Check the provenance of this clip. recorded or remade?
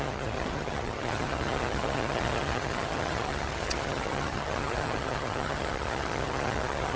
remade